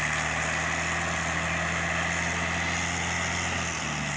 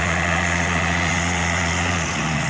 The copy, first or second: second